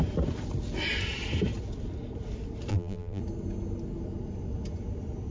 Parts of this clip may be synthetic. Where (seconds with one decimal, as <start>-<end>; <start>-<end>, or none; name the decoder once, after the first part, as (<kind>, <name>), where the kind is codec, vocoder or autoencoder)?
2.7-3.2 (vocoder, BigVGAN v2)